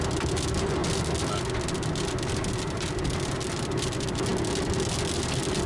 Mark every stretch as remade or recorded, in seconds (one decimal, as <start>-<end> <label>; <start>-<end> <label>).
0.0-0.8 remade; 0.8-3.6 recorded; 3.6-4.3 remade; 4.3-5.0 recorded; 5.0-5.7 remade